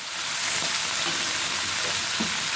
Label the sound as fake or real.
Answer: real